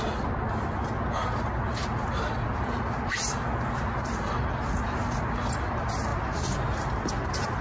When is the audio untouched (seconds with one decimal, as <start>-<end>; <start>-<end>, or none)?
0.0-7.6